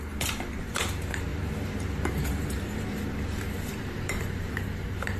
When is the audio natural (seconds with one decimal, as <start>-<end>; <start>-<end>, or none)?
none